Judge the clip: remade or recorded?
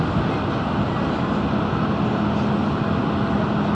recorded